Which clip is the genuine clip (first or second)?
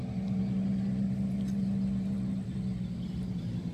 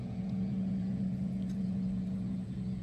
first